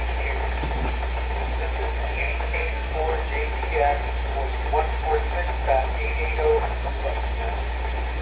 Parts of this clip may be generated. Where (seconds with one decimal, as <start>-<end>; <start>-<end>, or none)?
2.2-2.9; 6.5-7.0